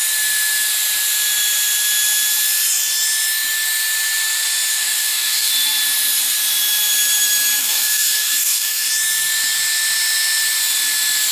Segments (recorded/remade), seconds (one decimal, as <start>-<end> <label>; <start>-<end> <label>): 0.0-4.7 recorded; 4.7-5.5 remade; 5.5-7.6 recorded; 7.6-8.9 remade; 8.9-11.3 recorded